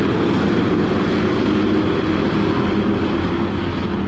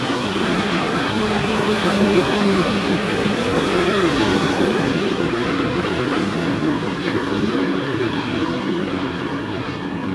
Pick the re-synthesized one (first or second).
second